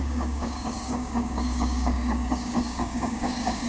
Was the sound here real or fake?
fake